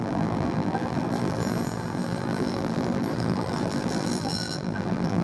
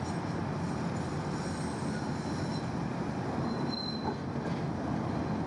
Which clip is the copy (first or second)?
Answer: first